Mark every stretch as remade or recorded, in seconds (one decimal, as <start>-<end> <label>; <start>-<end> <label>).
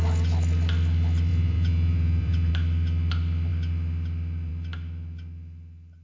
0.0-1.3 recorded; 1.3-2.5 remade; 2.5-6.0 recorded